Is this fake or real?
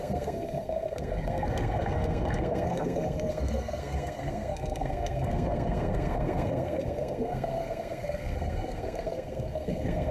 fake